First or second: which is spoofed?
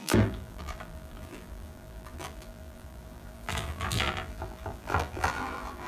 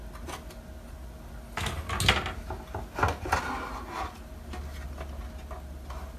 first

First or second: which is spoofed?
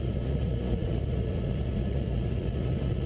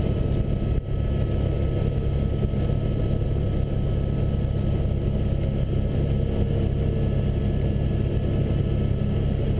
first